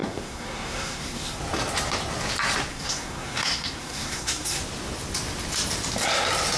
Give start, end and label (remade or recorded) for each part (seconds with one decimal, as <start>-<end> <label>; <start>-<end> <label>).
0.0-1.4 remade; 1.4-2.7 recorded; 2.7-4.6 remade; 4.6-6.6 recorded